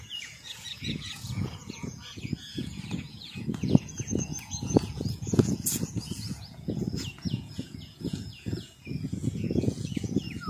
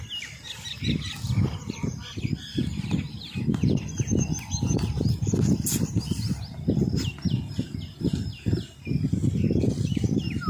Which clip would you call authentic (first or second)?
second